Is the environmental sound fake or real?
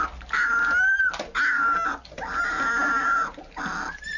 real